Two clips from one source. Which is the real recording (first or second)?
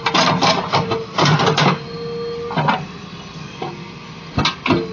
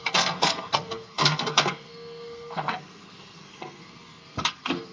first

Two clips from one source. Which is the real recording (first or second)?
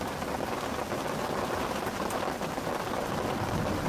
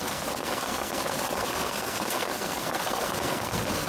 first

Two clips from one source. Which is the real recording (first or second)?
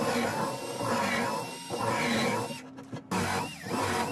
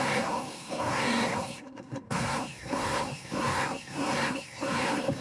first